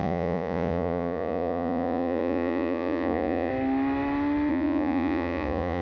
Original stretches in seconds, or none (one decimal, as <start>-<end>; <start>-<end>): 3.5-4.5